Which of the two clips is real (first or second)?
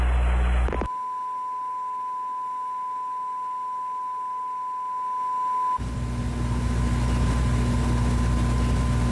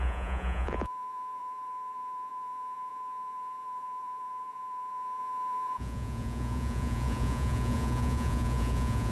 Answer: first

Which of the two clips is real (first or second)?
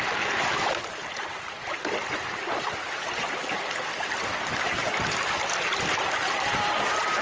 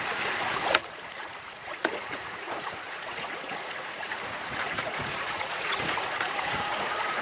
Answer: first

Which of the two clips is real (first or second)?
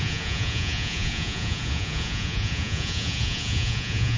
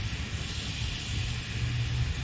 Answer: second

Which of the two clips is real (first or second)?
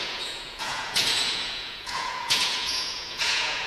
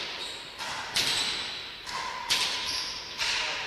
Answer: second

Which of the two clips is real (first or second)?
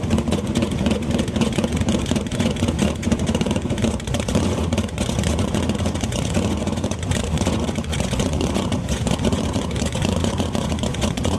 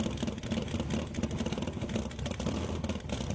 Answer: second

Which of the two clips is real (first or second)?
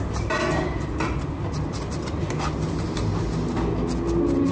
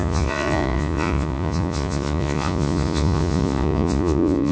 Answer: first